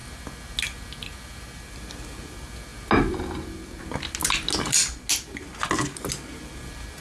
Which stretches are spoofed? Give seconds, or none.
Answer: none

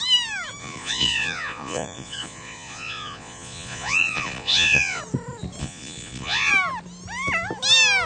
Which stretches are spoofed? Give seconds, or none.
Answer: 0.6-5.0; 5.6-6.5

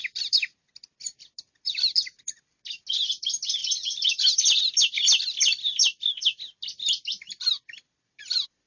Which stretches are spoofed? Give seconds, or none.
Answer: 3.2-3.6; 8.2-8.7

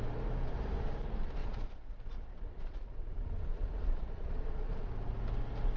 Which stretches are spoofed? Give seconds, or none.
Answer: 1.4-4.9

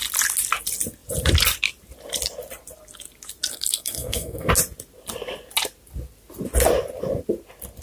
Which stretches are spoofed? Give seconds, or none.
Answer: 3.5-4.5